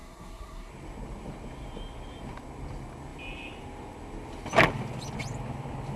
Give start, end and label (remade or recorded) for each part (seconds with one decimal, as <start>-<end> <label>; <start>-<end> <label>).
0.0-0.7 remade; 0.7-6.0 recorded